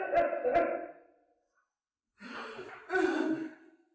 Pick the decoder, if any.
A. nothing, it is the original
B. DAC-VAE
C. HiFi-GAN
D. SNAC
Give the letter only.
A